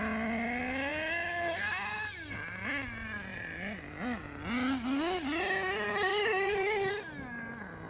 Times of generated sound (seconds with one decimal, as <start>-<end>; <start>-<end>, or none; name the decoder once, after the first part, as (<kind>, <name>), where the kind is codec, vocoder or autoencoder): 3.3-5.4 (vocoder, BigVGAN v2); 6.1-6.9